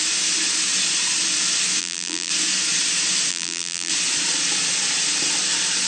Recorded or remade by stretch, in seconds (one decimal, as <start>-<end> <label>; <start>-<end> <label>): 0.0-1.8 recorded; 1.8-2.3 remade; 2.3-3.3 recorded; 3.3-3.9 remade; 3.9-5.9 recorded